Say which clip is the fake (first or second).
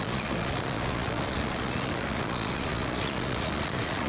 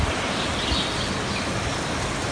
first